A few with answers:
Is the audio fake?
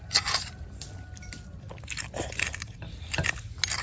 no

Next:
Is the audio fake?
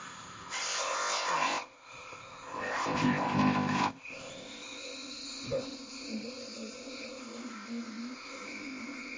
yes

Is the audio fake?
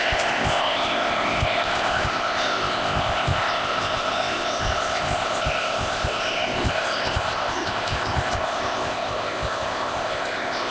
yes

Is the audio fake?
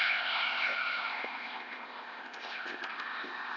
yes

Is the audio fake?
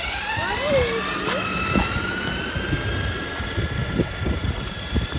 no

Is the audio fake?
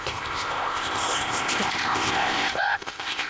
yes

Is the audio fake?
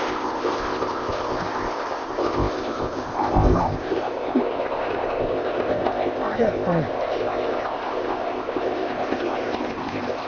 yes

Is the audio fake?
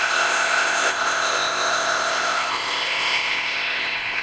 yes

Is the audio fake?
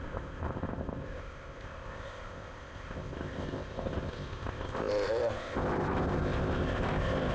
yes